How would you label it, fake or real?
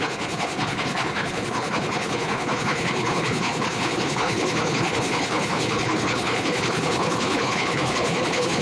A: fake